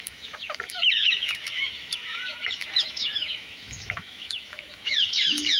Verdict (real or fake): fake